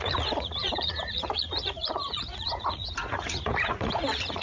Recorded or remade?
remade